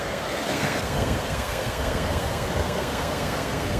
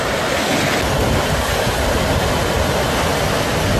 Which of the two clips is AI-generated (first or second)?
first